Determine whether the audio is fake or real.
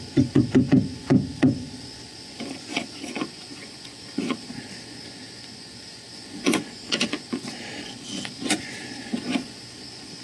fake